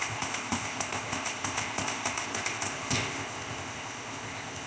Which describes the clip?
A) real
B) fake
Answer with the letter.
B